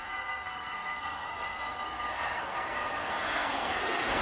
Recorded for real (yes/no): no